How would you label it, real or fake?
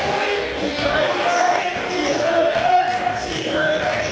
fake